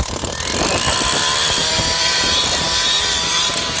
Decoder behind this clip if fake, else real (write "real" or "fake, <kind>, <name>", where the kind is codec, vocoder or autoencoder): fake, vocoder, BigVGAN v2